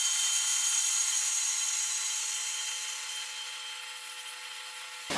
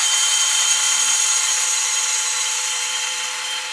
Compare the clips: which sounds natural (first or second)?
first